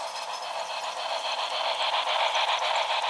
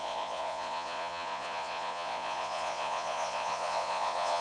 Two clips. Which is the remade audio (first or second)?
second